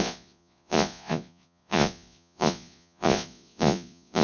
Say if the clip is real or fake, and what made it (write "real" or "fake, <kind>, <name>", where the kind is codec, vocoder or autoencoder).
fake, vocoder, Vocos